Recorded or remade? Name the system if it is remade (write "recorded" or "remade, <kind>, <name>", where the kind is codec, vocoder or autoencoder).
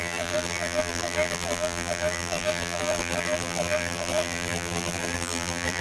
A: remade, vocoder, BigVGAN v2